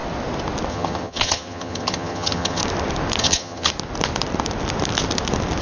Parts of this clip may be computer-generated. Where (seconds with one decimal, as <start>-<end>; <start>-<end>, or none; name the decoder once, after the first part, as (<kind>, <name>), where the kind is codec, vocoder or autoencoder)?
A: 0.7-2.6 (vocoder, HiFi-GAN); 3.2-3.7